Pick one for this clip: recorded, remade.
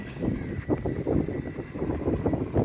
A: recorded